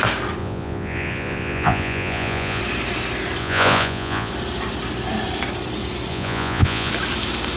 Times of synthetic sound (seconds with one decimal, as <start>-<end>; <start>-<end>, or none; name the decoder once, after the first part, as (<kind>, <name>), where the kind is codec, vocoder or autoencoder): 0.4-2.6 (vocoder, Vocos); 3.4-4.3; 6.1-6.9